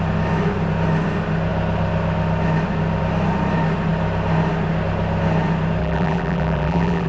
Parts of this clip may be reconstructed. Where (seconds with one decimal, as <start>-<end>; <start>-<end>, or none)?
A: 5.8-7.1